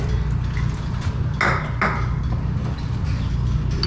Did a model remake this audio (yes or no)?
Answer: no